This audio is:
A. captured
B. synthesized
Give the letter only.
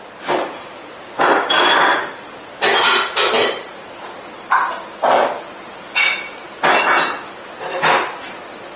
A